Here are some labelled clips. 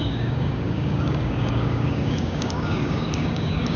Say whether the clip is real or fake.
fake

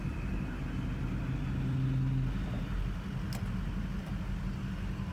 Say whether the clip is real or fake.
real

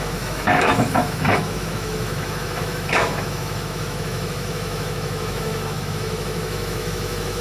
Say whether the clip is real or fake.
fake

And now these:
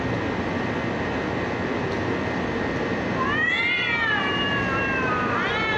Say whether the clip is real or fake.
real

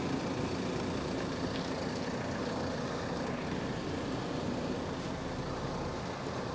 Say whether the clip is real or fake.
real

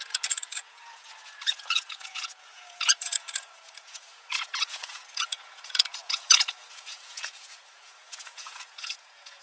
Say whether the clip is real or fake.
fake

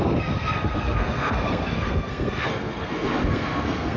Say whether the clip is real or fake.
fake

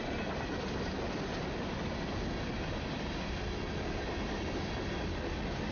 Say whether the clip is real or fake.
real